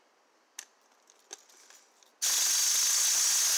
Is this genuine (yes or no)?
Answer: yes